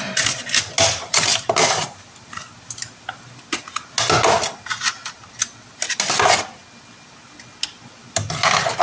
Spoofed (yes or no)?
no